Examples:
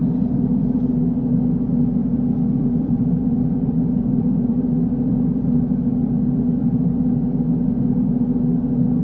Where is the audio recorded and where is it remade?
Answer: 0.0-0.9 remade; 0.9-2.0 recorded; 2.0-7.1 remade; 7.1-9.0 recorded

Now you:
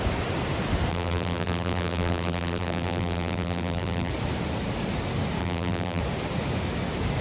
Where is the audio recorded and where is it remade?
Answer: 0.0-0.9 recorded; 0.9-4.1 remade; 4.1-5.4 recorded; 5.4-6.0 remade; 6.0-7.2 recorded

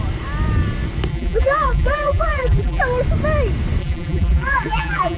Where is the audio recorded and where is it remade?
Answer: 0.0-1.1 recorded; 1.1-2.8 remade; 2.8-3.8 recorded; 3.8-5.2 remade

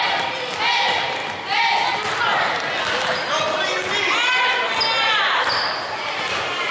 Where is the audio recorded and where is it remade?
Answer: 0.0-6.7 recorded

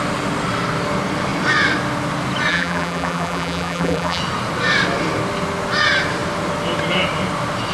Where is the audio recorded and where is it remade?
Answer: 0.0-2.5 recorded; 2.5-4.2 remade; 4.2-7.7 recorded

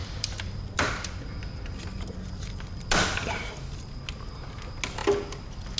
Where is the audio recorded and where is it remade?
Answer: 0.0-3.5 remade; 3.5-5.8 recorded